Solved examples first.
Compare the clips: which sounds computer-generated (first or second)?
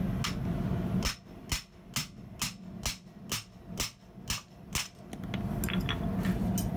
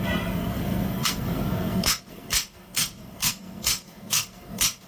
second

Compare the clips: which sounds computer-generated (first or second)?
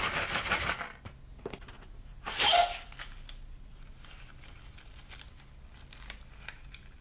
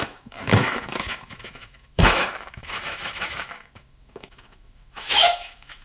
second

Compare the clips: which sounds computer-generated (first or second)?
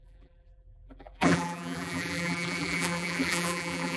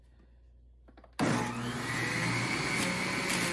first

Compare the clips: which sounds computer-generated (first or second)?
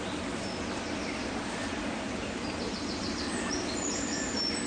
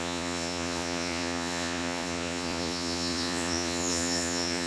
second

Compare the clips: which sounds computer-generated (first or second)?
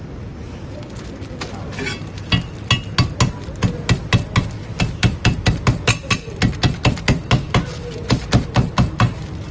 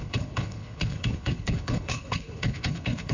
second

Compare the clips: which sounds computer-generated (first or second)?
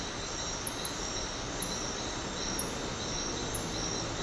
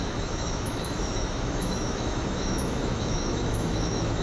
second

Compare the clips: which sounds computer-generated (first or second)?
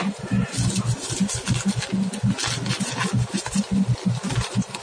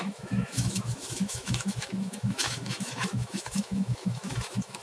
second